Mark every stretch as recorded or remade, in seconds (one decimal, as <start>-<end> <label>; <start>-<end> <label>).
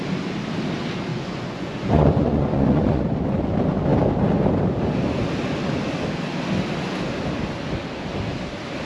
0.0-1.1 recorded; 1.1-3.0 remade; 3.0-8.9 recorded